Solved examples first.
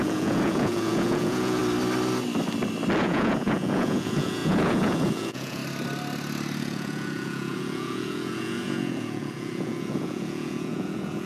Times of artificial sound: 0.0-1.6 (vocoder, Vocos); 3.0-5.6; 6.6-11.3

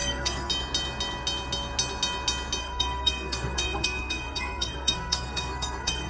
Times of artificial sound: 0.0-0.5 (codec, SNAC); 2.6-6.1

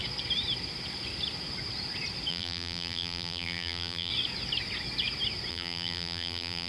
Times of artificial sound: 2.3-4.1 (vocoder, BigVGAN v2); 5.5-6.7